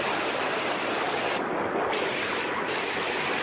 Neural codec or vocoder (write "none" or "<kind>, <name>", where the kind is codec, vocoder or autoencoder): none